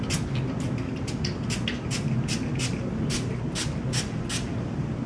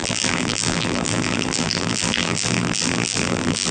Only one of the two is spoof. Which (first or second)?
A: second